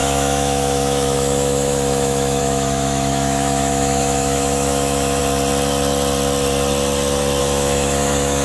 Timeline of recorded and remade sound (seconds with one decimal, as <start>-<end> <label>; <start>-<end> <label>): 0.0-5.2 remade; 5.2-7.4 recorded; 7.4-8.4 remade